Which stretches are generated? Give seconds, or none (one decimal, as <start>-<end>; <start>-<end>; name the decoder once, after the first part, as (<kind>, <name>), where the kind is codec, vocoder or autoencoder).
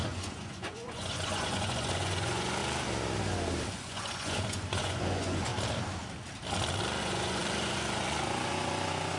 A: 0.0-2.6 (vocoder, Vocos); 3.7-5.5; 7.0-9.2